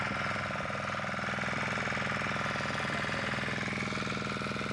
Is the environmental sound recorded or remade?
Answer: recorded